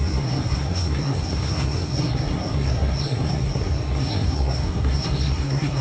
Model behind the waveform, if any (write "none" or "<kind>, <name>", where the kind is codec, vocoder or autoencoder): codec, SNAC